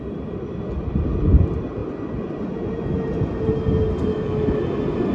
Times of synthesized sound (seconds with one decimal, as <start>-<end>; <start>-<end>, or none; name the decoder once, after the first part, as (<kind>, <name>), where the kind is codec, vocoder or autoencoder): 4.1-4.6 (autoencoder, DAC-VAE)